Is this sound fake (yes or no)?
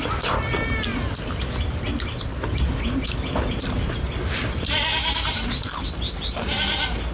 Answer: no